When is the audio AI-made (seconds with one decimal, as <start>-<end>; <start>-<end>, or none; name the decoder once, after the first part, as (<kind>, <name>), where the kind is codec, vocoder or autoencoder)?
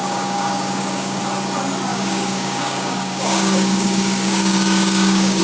0.0-1.2 (codec, DAC); 1.9-5.4